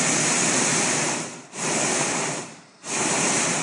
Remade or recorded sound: recorded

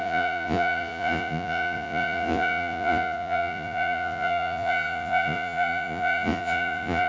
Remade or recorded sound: remade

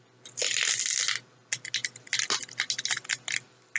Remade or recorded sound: recorded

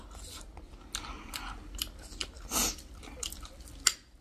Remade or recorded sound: recorded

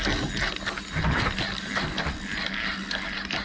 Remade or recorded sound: recorded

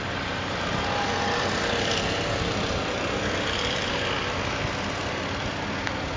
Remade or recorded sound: recorded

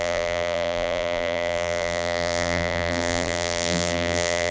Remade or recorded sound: remade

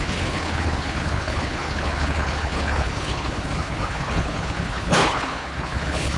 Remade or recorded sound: remade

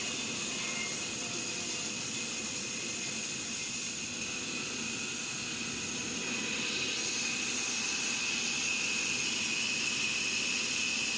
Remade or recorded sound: recorded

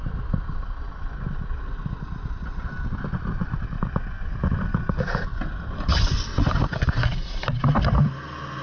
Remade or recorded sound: recorded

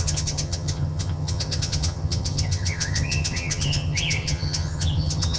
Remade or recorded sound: remade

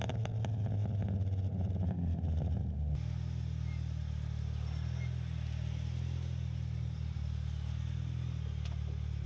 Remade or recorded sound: recorded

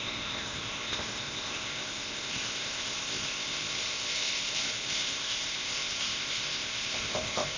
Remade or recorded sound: remade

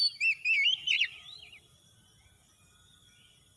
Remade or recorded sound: recorded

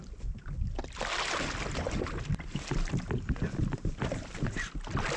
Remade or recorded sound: recorded